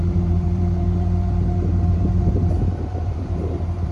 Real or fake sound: fake